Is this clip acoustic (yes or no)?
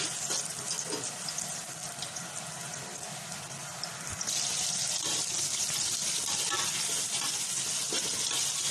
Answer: yes